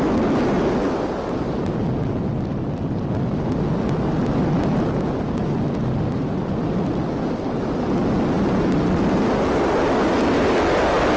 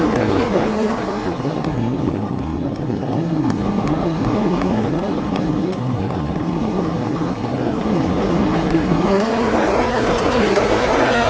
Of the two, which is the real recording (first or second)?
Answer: first